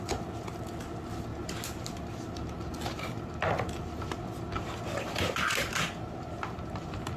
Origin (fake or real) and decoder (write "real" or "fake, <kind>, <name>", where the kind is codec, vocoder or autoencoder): real